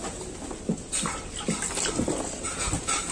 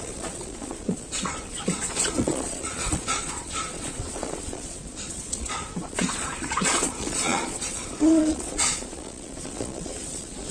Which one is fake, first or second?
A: second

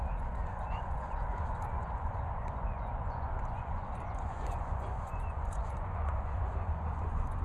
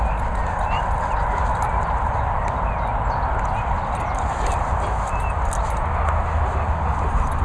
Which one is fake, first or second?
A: first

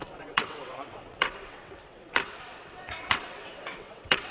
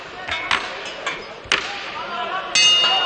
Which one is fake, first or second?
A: first